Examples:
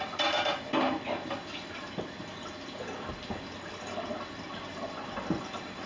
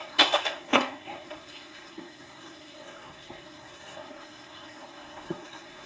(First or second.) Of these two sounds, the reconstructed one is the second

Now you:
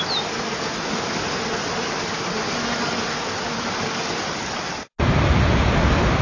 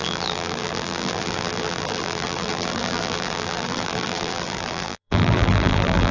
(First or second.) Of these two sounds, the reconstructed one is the second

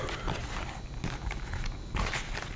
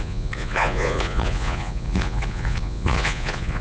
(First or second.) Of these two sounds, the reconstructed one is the second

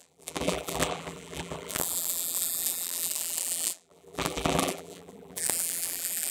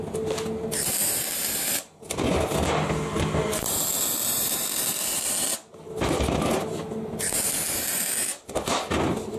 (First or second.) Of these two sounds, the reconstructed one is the first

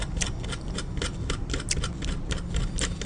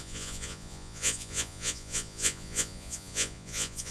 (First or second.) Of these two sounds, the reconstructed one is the second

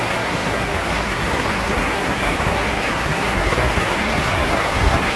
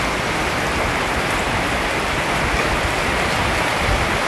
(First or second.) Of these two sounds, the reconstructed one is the first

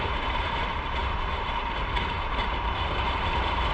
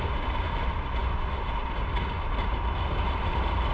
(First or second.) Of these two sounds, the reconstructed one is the first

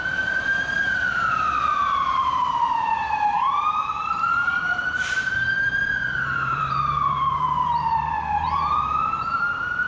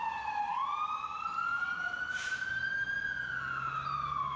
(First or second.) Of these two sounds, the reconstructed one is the first